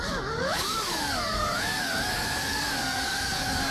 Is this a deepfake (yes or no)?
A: yes